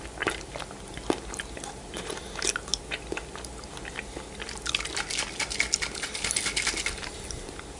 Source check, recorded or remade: recorded